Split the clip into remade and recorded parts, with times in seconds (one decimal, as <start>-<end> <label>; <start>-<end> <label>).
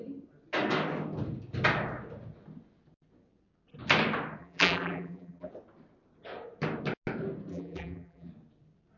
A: 0.0-4.4 recorded; 4.4-5.5 remade; 5.5-7.5 recorded; 7.5-8.3 remade; 8.3-9.0 recorded